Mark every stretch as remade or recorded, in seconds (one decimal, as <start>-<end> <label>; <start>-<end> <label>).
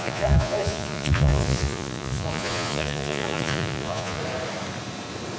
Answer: 0.0-4.2 remade; 4.2-5.4 recorded